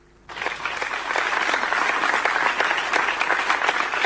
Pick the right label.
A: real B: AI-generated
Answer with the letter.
A